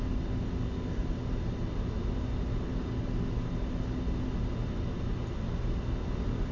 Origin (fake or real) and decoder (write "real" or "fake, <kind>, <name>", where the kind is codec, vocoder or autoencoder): real